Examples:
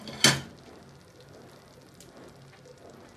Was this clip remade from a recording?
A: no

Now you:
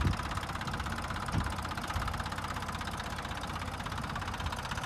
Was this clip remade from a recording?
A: no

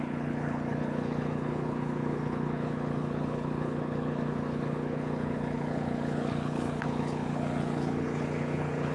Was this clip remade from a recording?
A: yes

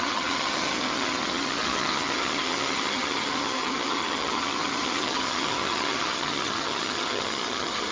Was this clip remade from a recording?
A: yes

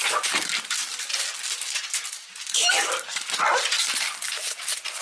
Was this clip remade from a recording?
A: no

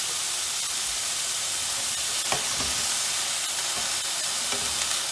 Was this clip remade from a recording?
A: no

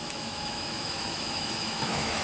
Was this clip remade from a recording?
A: yes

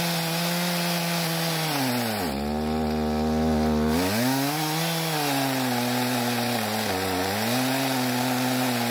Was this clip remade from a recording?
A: no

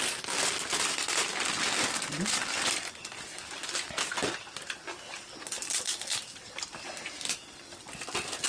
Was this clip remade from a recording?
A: no